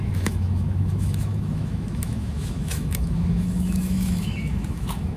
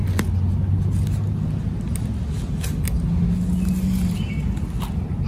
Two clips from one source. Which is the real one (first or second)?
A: second